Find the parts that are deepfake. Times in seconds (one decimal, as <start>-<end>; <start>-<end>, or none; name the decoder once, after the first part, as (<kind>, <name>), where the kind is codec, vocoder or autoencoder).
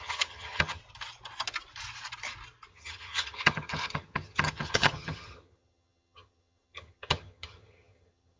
0.0-0.8 (vocoder, HiFi-GAN); 2.7-8.4